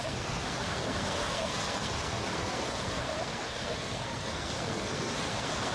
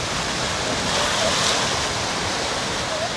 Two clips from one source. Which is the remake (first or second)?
first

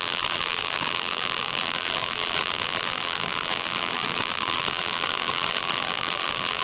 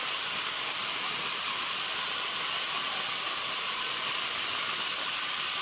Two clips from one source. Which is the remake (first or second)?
first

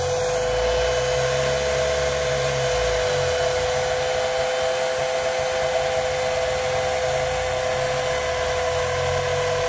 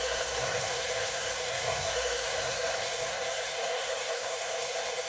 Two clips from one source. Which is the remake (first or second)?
second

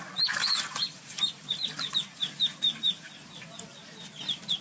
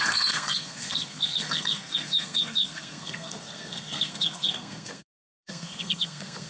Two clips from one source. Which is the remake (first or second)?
second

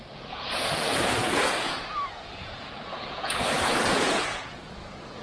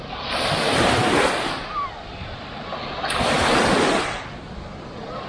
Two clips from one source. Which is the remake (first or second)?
first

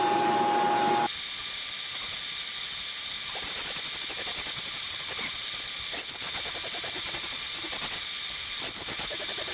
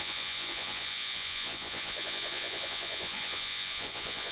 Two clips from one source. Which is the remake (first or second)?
second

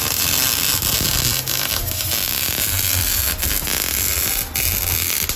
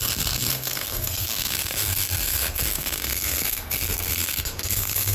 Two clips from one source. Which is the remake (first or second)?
second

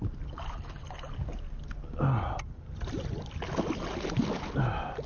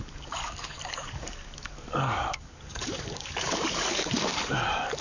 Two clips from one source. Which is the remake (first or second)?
second